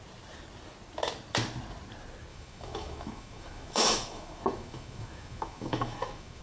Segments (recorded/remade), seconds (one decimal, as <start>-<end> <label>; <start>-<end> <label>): 0.0-2.3 recorded; 2.3-6.4 remade